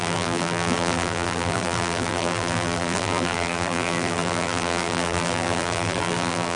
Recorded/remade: remade